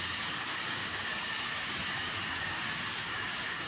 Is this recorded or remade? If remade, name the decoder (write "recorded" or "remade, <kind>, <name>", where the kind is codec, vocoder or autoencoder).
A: remade, codec, DAC